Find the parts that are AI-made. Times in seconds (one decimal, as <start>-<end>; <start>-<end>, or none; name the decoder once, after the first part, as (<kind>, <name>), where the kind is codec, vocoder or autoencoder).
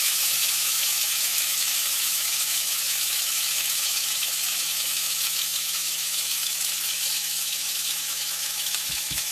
0.0-9.3 (autoencoder, DAC-VAE)